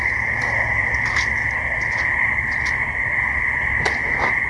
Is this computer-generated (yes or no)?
no